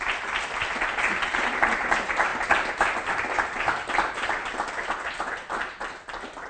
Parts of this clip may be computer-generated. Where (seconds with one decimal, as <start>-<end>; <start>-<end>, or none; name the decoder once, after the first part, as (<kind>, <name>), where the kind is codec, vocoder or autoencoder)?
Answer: none